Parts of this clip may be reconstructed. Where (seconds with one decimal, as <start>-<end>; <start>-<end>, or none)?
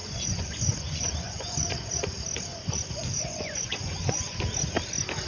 0.0-2.0; 2.5-4.4